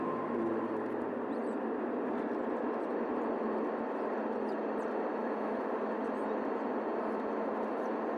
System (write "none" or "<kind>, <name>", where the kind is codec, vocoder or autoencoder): none